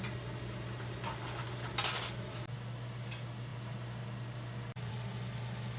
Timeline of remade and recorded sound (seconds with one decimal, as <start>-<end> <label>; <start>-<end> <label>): 0.0-5.8 recorded